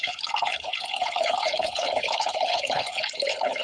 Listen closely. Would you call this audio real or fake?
fake